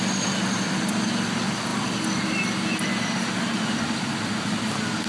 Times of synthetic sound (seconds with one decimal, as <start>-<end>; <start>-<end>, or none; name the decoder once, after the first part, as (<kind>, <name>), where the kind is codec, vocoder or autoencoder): none